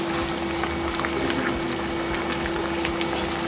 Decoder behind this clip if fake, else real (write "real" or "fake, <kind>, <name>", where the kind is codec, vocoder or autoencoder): real